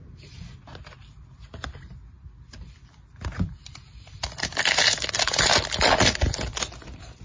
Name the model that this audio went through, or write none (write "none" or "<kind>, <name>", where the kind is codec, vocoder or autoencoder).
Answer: none